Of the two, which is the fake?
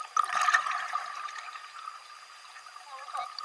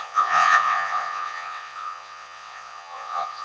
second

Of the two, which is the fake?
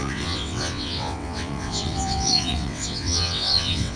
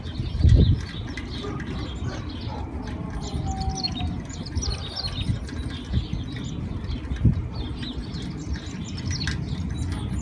first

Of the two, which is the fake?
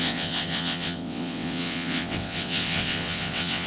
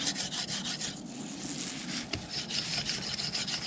first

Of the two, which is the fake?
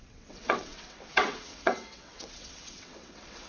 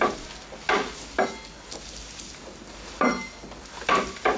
first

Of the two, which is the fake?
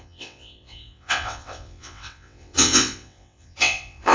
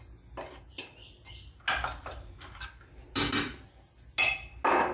first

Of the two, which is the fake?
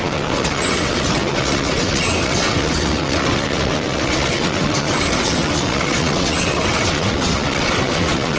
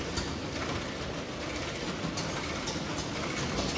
first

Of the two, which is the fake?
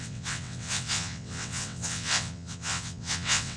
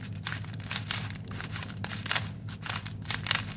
first